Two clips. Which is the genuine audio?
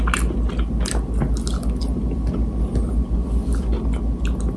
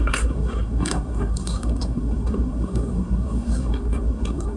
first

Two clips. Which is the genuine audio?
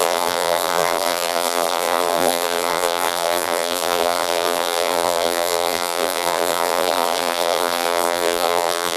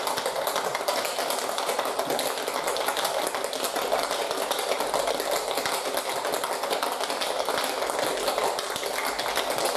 second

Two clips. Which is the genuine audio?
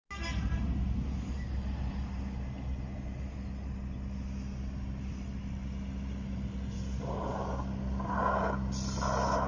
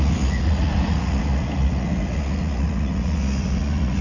first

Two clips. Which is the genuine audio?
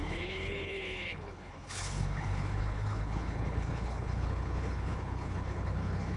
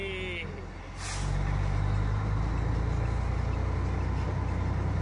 second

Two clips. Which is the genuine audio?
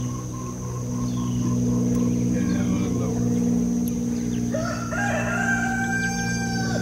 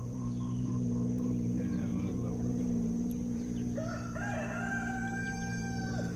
first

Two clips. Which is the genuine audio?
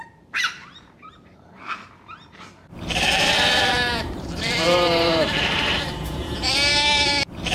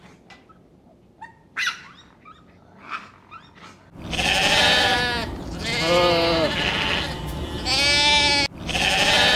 second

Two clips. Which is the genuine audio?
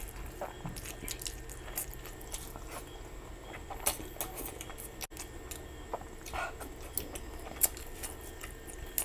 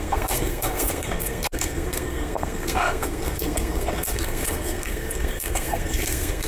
first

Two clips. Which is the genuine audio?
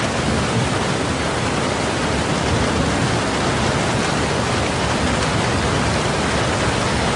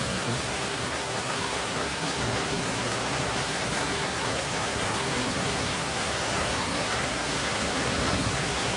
first